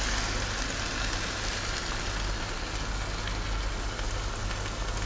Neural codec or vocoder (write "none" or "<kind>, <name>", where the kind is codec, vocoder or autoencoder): none